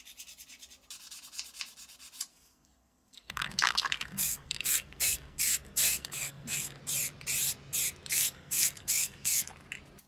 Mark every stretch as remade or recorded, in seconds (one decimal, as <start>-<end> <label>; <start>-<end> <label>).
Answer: 0.0-2.3 recorded; 2.3-6.8 remade; 6.8-8.1 recorded; 8.1-9.5 remade; 9.5-10.1 recorded